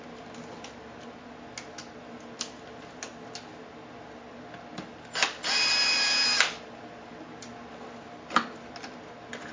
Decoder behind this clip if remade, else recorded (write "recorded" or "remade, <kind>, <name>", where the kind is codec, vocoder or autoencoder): recorded